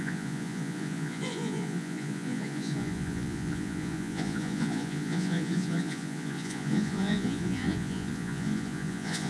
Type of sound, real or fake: fake